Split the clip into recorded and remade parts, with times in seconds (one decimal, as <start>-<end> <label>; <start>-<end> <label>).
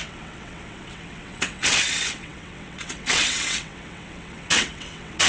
0.0-5.3 remade